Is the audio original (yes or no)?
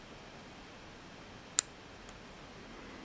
yes